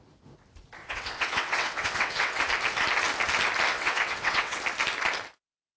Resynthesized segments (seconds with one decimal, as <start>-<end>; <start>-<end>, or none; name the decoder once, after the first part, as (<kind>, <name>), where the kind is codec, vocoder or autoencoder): 0.8-2.4 (vocoder, WaveNeXt); 3.7-4.6